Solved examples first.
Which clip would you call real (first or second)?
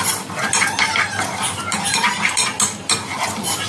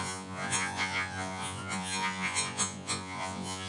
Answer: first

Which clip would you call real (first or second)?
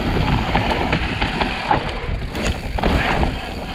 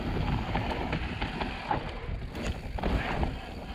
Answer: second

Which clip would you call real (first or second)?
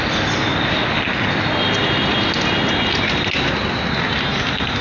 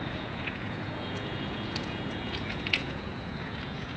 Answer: first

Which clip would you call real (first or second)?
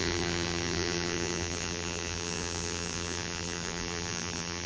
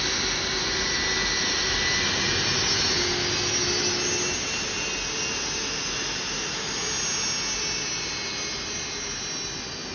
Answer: second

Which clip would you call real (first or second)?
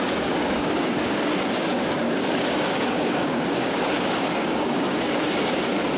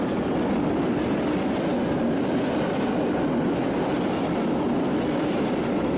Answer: second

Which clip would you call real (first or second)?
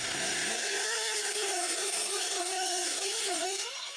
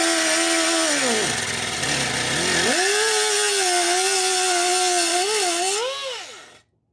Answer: second